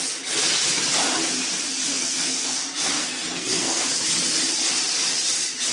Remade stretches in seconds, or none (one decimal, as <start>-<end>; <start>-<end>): 1.9-3.9